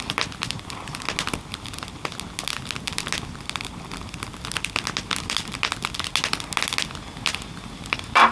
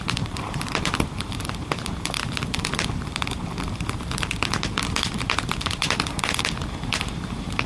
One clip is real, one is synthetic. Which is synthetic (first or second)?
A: second